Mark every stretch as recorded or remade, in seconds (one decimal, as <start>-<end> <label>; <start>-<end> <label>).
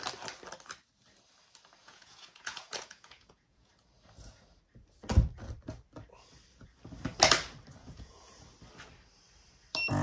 0.0-1.8 recorded; 1.8-3.7 remade; 3.7-7.8 recorded; 7.8-8.4 remade; 8.4-10.0 recorded